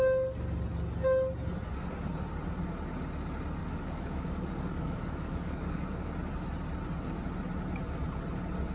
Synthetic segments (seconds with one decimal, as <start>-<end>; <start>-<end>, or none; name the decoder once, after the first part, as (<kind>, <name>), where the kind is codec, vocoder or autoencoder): 3.6-6.1 (codec, DAC)